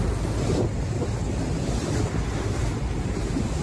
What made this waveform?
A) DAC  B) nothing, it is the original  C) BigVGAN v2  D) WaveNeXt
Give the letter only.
B